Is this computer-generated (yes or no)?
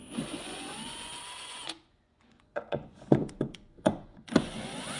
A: yes